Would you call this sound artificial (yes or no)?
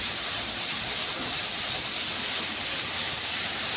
no